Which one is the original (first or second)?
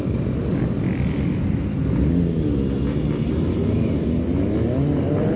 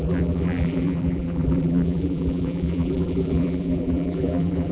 first